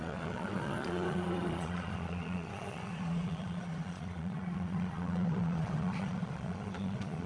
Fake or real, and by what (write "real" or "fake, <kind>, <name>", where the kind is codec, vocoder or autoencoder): fake, vocoder, Vocos